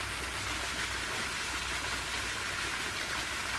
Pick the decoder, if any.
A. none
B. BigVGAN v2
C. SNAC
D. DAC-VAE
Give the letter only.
A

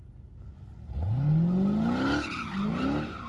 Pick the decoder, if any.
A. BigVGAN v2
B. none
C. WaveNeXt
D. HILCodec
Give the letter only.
B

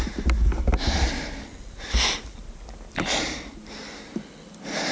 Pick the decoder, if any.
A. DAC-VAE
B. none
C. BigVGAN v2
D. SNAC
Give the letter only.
B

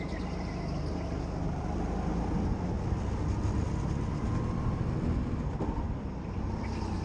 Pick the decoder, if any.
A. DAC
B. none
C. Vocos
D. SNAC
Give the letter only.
B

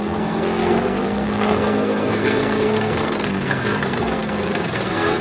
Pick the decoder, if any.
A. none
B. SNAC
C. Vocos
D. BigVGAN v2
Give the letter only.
B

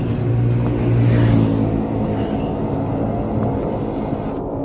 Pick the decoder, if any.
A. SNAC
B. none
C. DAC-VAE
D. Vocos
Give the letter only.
B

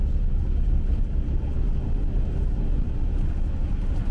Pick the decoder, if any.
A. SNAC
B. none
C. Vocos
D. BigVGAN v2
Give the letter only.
B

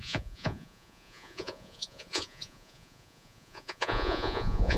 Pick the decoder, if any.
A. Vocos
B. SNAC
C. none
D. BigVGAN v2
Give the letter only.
A